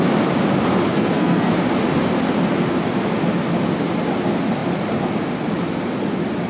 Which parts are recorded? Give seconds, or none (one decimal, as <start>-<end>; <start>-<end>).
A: 0.0-0.9; 1.5-6.5